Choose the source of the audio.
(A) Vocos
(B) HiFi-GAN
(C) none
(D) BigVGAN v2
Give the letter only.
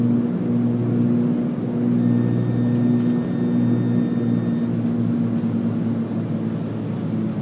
C